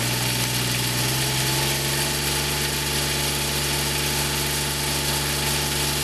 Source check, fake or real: real